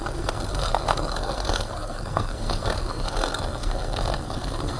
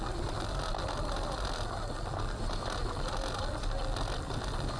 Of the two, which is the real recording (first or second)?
second